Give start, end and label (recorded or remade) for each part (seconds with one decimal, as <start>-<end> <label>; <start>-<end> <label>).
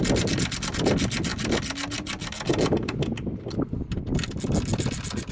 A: 0.0-5.3 recorded